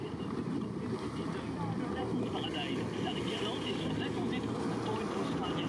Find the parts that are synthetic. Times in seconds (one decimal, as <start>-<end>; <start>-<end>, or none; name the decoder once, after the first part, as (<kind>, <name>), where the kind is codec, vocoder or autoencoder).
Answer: none